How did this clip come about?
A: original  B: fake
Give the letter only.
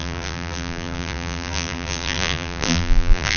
B